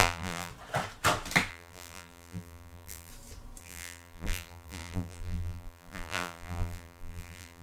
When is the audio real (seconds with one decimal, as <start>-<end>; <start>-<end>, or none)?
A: 0.5-1.5; 3.1-3.6

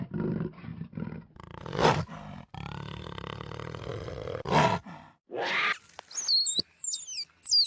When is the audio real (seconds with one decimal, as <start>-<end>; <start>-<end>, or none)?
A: 0.0-7.7

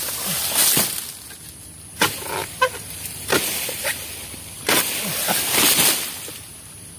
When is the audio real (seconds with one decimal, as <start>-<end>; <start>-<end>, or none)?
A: 0.0-2.4; 6.6-7.0

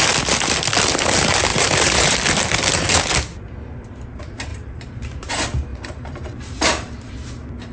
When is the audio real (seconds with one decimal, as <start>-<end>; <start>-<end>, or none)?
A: 0.0-1.5; 2.2-4.5; 5.3-5.7; 7.1-7.7

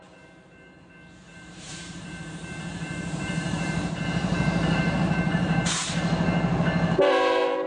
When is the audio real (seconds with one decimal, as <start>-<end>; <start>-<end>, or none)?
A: 0.0-1.3; 5.9-7.7

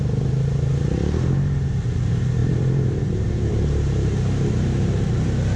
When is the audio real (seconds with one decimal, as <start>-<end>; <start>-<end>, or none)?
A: 0.0-2.4; 4.2-5.6